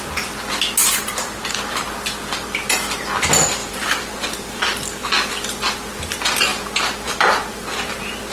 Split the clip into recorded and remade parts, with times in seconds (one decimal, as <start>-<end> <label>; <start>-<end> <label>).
0.0-0.8 recorded; 0.8-1.6 remade; 1.6-3.6 recorded; 3.6-4.6 remade; 4.6-8.3 recorded